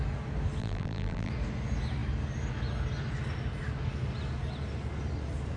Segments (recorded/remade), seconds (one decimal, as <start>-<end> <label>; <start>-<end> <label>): 0.0-0.6 recorded; 0.6-1.3 remade; 1.3-5.6 recorded